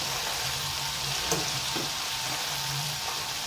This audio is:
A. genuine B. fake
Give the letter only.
B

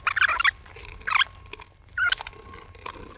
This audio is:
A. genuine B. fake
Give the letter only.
A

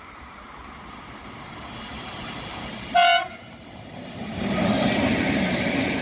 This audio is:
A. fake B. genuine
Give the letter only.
A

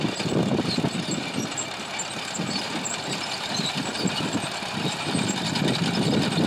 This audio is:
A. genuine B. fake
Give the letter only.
A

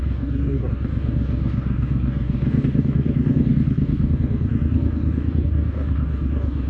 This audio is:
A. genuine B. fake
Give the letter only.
B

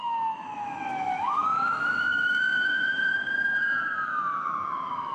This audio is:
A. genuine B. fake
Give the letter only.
B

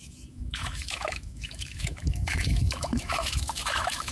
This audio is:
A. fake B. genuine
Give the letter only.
A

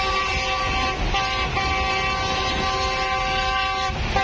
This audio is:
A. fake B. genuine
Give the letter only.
B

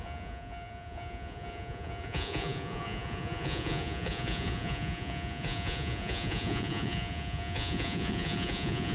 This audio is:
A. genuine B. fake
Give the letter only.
B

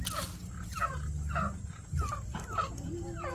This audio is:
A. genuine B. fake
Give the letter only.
A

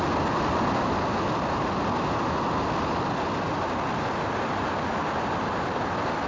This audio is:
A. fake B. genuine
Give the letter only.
B